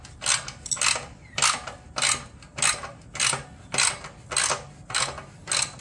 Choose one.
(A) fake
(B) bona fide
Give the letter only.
B